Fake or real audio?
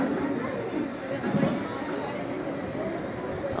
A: real